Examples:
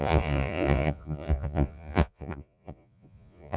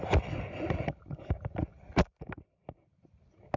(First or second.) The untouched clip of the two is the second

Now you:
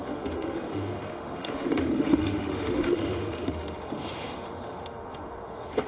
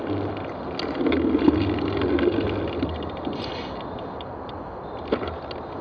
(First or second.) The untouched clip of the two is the second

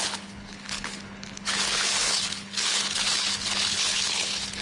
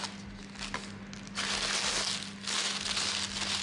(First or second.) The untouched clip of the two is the second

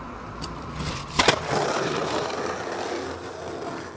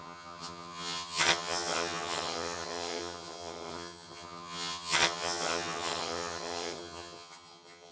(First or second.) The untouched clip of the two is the first